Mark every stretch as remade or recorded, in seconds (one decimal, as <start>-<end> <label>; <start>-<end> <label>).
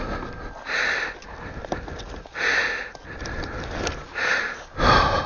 0.0-5.3 recorded